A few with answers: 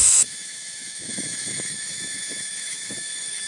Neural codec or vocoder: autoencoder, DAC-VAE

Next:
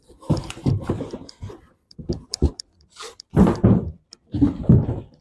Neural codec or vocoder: vocoder, BigVGAN v2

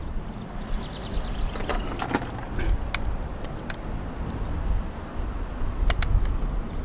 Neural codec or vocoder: none